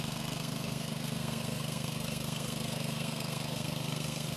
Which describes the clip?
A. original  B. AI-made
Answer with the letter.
B